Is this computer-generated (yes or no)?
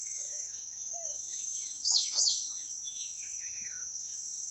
yes